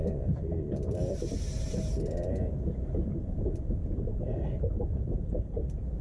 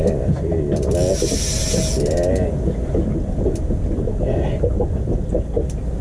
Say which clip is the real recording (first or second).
second